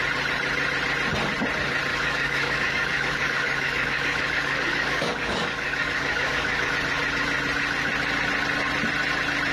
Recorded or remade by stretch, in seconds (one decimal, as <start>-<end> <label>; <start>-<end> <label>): 0.0-1.9 recorded; 1.9-6.7 remade; 6.7-9.5 recorded